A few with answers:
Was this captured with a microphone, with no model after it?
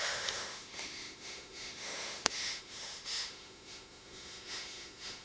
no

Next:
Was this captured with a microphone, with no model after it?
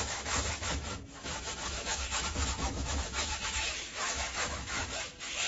no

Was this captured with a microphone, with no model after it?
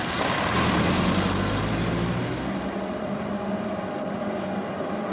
yes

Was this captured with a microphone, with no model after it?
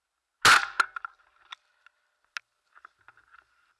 yes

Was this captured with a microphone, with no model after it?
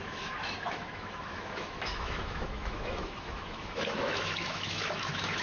no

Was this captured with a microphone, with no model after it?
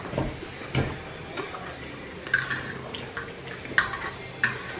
yes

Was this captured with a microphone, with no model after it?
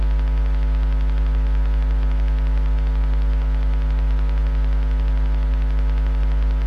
yes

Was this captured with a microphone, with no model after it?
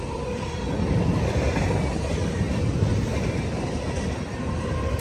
yes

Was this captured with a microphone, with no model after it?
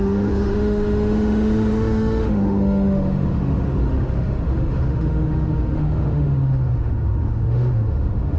no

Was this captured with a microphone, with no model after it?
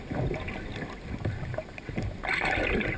yes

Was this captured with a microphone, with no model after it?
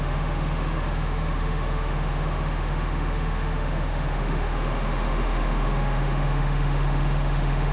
no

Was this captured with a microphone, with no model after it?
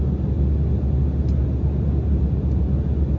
yes